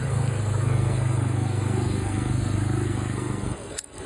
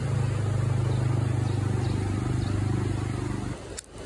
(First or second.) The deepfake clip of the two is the first